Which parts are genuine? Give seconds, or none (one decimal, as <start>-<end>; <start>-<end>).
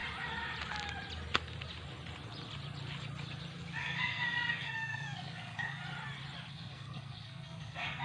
0.0-3.8; 5.8-6.5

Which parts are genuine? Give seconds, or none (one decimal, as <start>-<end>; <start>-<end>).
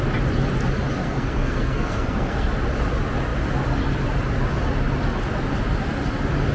0.0-1.0; 2.5-6.5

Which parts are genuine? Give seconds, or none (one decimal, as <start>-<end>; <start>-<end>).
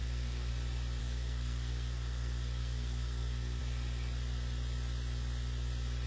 0.5-1.0; 3.6-6.1